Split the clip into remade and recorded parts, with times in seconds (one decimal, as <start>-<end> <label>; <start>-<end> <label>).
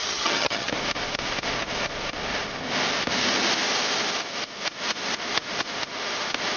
0.0-0.7 remade; 0.7-6.6 recorded